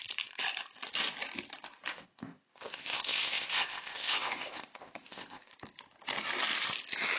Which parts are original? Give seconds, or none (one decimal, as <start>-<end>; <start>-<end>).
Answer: 0.0-1.9; 5.5-7.2